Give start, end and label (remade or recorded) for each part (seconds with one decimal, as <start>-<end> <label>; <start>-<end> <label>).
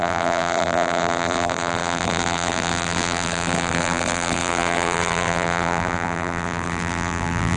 0.0-7.6 remade